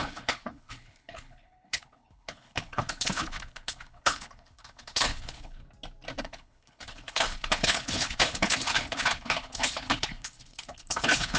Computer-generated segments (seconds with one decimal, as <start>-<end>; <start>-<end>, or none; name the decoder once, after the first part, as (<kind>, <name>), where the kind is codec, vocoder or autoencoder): 0.0-5.6 (codec, HILCodec); 6.2-11.4